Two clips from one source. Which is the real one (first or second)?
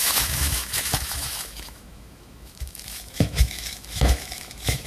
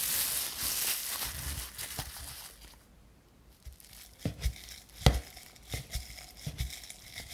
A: second